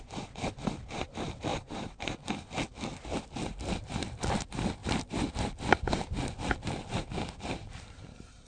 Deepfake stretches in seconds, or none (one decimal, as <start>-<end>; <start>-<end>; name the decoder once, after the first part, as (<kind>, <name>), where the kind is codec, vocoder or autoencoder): 1.5-2.1 (vocoder, BigVGAN v2); 4.8-5.3